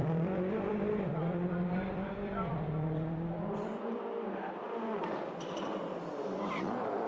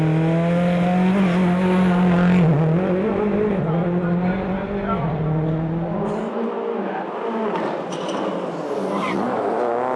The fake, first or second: first